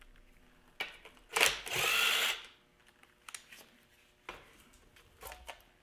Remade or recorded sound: recorded